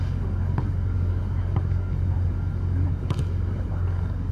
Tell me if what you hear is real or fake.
fake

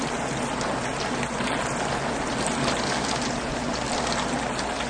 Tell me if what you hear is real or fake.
real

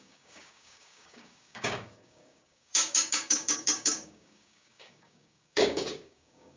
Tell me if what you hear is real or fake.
fake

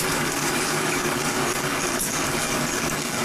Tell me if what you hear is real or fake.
fake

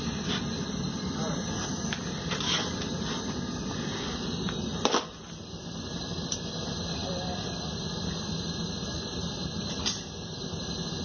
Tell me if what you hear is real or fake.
real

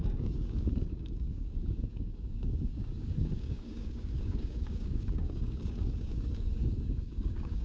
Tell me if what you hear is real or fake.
fake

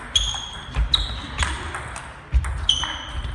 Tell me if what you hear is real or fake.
real